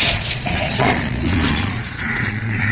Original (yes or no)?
no